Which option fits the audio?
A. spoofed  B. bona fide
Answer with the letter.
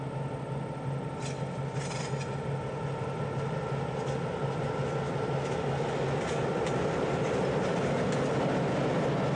B